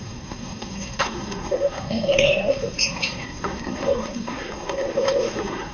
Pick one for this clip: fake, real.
fake